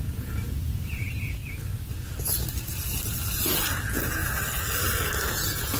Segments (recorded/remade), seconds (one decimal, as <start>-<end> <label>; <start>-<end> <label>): 0.0-1.4 remade; 1.4-3.4 recorded; 3.4-4.2 remade; 4.2-5.3 recorded; 5.3-5.8 remade